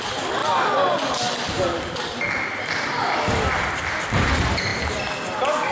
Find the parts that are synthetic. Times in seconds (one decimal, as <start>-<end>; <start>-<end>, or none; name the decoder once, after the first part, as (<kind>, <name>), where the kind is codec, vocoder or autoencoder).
none